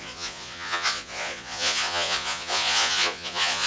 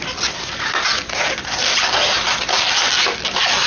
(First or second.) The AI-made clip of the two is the first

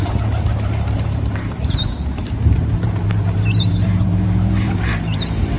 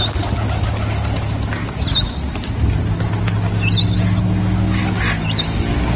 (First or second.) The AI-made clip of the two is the first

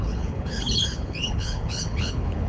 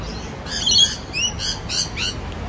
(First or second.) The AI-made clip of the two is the first